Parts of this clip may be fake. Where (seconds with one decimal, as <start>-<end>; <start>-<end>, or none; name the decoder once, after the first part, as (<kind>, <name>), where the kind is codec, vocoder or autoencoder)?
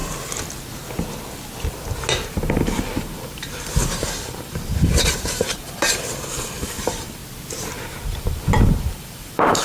2.5-7.2 (vocoder, BigVGAN v2); 7.8-9.6